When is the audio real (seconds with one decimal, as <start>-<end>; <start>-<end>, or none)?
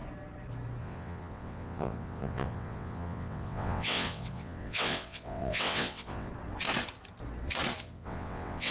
0.0-0.8; 6.3-7.8